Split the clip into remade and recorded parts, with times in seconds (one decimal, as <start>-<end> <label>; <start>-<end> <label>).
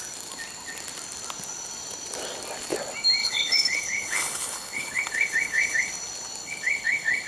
0.0-3.2 recorded; 3.2-5.9 remade; 5.9-6.4 recorded; 6.4-7.3 remade